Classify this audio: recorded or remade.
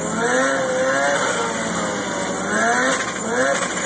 recorded